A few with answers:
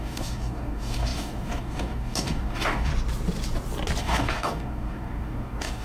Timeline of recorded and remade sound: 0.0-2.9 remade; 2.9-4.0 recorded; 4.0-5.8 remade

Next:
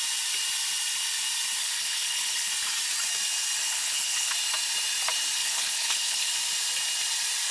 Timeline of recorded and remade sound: 0.0-1.6 recorded; 1.6-2.5 remade; 2.5-3.6 recorded; 3.6-4.3 remade; 4.3-5.4 recorded; 5.4-6.3 remade; 6.3-7.5 recorded

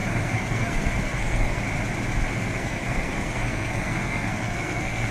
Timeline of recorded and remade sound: 0.0-1.6 remade; 1.6-2.3 recorded; 2.3-5.1 remade

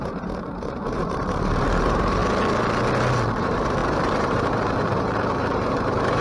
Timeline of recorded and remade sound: 0.0-2.2 remade; 2.2-3.4 recorded; 3.4-6.2 remade

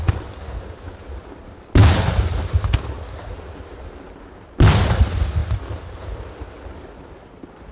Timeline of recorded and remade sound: 0.0-7.7 recorded

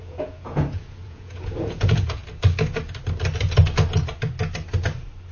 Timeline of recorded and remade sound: 0.0-2.2 remade; 2.2-5.3 recorded